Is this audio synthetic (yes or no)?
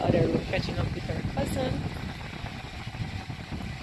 no